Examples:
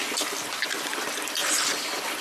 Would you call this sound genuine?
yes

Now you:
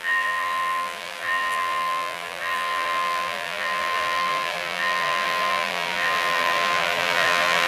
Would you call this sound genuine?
no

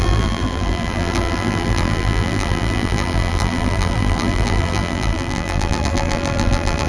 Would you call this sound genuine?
no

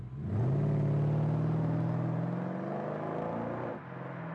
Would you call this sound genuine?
yes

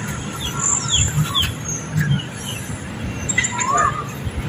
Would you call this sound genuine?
yes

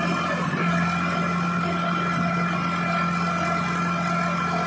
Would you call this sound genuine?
yes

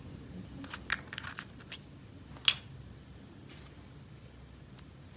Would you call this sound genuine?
yes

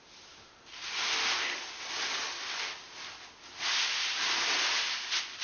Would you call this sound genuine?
yes